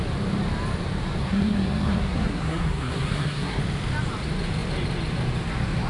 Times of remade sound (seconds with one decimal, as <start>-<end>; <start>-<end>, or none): 1.2-3.6